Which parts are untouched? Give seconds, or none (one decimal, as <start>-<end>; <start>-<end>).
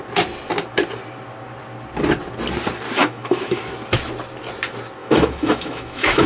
0.0-3.0; 3.6-5.0